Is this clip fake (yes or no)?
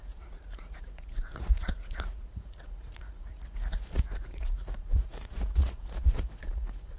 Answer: yes